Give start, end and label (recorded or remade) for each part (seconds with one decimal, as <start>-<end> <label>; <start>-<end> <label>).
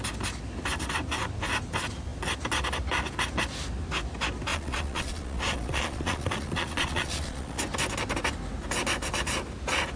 0.0-4.5 recorded; 4.5-7.6 remade; 7.6-10.0 recorded